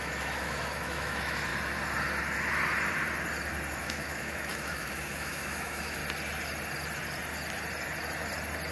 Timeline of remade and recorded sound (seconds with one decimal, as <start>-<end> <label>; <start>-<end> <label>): 0.0-1.5 remade; 1.5-3.8 recorded; 3.8-6.0 remade; 6.0-8.7 recorded